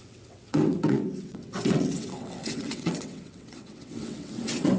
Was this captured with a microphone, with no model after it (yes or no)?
no